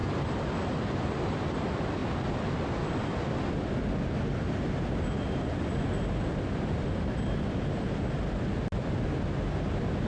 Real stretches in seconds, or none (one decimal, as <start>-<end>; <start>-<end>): 0.0-10.1